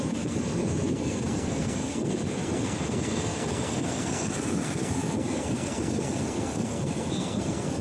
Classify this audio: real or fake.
fake